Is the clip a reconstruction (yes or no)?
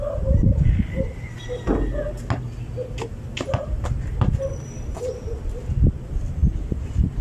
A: no